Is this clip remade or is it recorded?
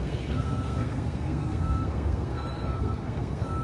remade